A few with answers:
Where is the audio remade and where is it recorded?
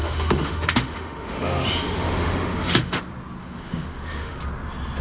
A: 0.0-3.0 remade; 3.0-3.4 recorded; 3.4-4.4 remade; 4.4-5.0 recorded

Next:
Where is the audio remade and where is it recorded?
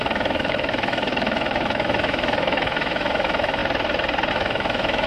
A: 0.0-3.6 remade; 3.6-4.3 recorded; 4.3-5.1 remade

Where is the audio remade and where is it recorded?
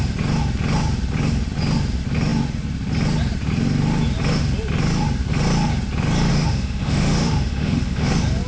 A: 0.0-6.3 recorded; 6.3-8.1 remade; 8.1-8.5 recorded